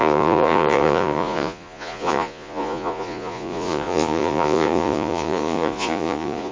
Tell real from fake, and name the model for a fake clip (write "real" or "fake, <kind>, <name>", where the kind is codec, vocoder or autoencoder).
fake, vocoder, Vocos